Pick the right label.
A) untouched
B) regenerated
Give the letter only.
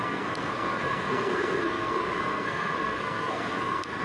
B